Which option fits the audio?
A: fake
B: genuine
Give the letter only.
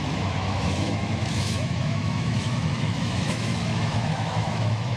A